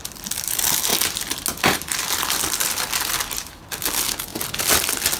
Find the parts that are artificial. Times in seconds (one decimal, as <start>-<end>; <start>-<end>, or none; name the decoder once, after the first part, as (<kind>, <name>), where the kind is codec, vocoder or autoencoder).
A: none